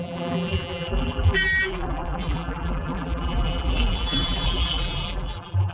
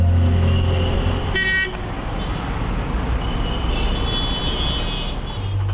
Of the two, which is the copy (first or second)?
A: first